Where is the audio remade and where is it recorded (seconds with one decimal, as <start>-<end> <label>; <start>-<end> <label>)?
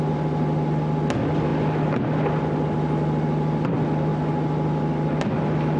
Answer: 0.0-5.8 recorded